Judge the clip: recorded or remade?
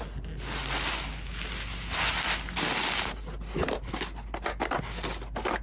recorded